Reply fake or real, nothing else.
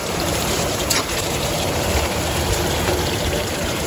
fake